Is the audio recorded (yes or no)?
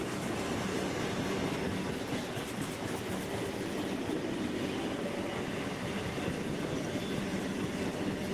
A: yes